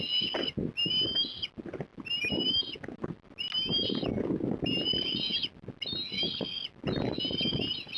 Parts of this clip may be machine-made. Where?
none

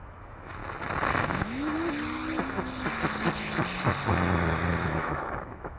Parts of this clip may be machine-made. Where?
0.0-0.6 (autoencoder, DAC-VAE); 1.1-1.7; 4.7-5.8